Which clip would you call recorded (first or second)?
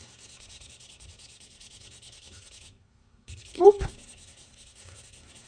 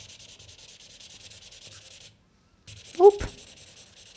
second